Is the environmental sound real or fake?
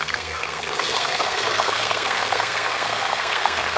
fake